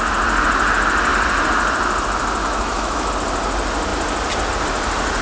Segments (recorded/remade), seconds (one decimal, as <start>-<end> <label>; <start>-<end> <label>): 0.0-2.4 recorded; 2.4-3.1 remade; 3.1-5.2 recorded